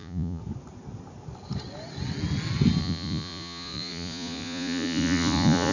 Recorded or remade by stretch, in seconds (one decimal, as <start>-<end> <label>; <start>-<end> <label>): 0.0-0.4 remade; 0.4-2.8 recorded; 2.8-5.7 remade